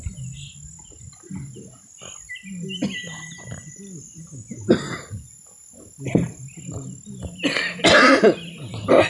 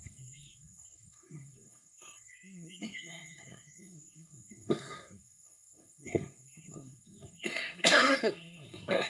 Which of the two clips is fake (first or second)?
second